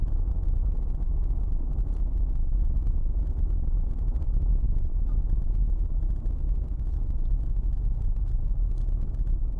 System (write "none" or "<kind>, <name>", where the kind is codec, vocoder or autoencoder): none